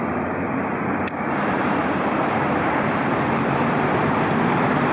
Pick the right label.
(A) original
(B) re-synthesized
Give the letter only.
B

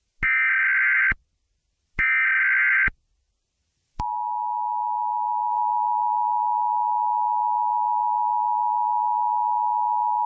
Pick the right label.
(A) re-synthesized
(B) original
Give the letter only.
B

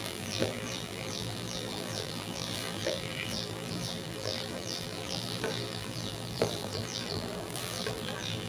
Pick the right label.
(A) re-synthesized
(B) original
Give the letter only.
A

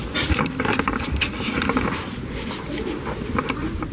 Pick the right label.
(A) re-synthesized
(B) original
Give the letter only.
A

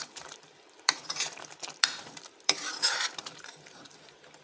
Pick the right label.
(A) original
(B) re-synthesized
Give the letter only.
B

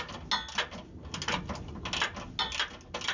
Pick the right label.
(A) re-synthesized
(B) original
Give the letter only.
B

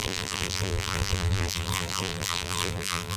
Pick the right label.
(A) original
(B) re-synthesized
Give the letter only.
B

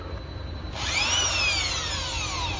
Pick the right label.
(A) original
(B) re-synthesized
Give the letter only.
B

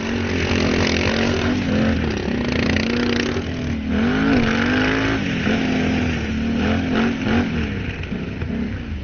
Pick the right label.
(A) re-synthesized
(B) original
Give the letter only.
B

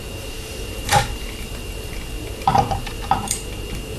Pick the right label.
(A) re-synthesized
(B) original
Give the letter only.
A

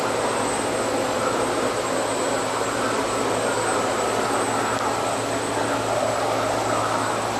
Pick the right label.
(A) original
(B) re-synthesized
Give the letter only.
A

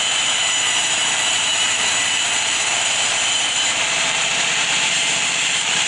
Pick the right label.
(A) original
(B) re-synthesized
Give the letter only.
B